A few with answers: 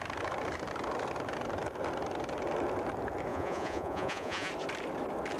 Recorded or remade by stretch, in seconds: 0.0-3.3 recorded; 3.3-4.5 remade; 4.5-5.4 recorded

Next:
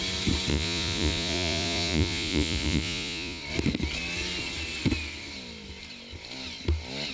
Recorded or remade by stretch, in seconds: 0.0-0.5 recorded; 0.5-3.4 remade; 3.4-7.1 recorded

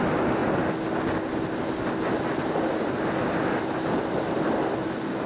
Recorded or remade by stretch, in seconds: 0.0-5.3 recorded

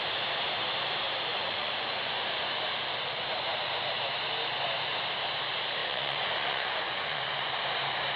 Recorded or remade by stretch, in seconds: 0.0-1.3 recorded; 1.3-2.6 remade; 2.6-5.8 recorded; 5.8-7.5 remade; 7.5-8.2 recorded

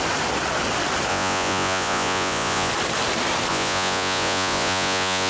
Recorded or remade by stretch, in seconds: 0.0-1.1 recorded; 1.1-2.7 remade; 2.7-3.5 recorded; 3.5-5.3 remade

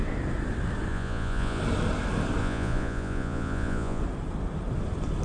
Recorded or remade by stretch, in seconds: 0.0-0.9 recorded; 0.9-1.6 remade; 1.6-2.4 recorded; 2.4-4.0 remade; 4.0-5.2 recorded

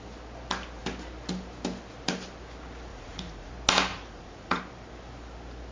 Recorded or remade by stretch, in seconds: 0.0-2.9 recorded; 2.9-3.5 remade; 3.5-3.9 recorded; 3.9-4.6 remade; 4.6-5.7 recorded